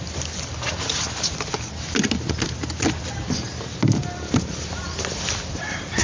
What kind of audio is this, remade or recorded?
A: recorded